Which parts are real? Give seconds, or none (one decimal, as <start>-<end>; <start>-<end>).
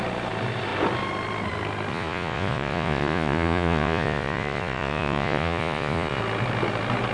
0.0-1.9; 6.2-7.1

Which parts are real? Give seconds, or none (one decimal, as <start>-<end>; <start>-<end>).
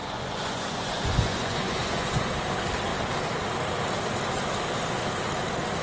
2.3-5.8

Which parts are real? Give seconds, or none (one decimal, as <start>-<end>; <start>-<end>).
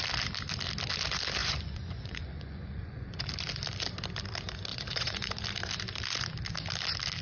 0.0-1.4; 3.3-4.7; 5.3-7.2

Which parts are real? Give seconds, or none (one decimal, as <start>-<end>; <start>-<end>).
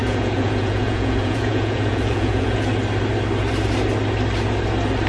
2.7-5.1